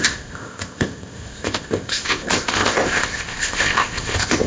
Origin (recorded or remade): remade